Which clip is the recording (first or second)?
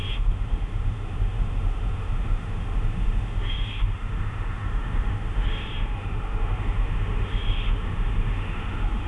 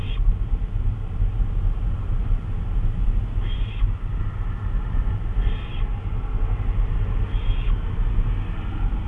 second